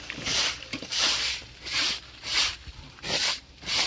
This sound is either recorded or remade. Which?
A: remade